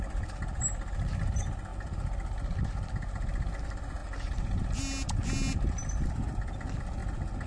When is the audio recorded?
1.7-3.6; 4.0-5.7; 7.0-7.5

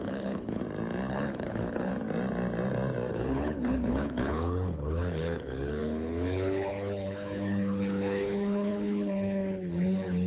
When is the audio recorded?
0.6-1.1; 1.9-3.1

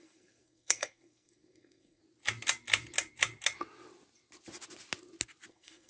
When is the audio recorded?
2.0-5.5

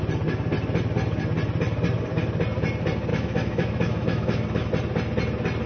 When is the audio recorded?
0.0-3.1; 4.7-5.7